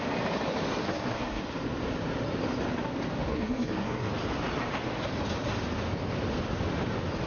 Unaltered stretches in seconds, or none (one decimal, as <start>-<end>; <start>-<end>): 0.0-0.8; 1.4-3.3; 4.1-7.3